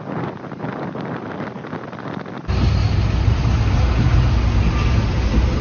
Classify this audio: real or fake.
real